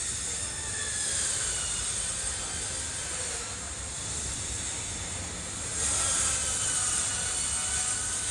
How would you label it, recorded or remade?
recorded